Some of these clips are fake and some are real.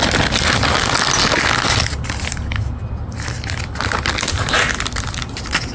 real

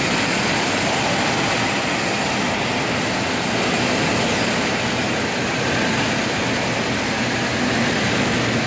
real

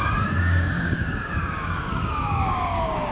fake